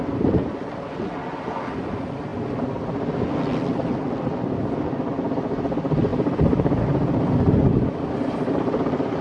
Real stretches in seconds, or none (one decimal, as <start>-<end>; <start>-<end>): 0.0-9.2